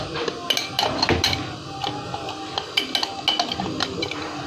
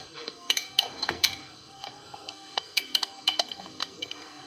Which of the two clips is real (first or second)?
first